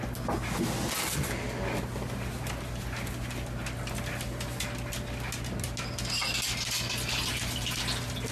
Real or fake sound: real